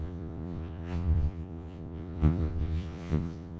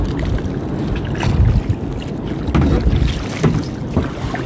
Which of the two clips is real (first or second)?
second